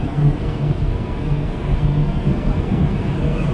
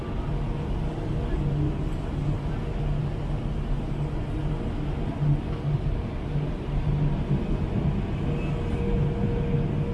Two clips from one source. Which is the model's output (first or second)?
first